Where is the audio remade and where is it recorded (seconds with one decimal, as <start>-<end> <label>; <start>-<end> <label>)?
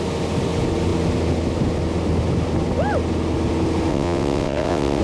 0.0-3.9 recorded; 3.9-5.0 remade